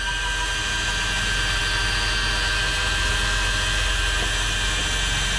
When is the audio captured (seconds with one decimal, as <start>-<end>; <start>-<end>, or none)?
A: 0.0-5.4